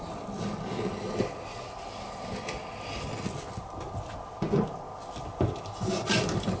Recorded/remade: recorded